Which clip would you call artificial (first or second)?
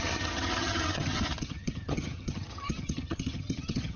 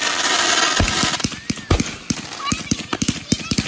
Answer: first